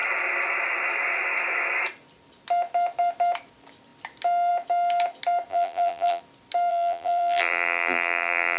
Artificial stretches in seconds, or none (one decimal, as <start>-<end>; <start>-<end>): 5.5-6.2; 6.7-8.6